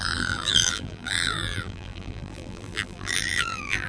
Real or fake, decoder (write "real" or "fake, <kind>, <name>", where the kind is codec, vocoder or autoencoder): fake, vocoder, BigVGAN v2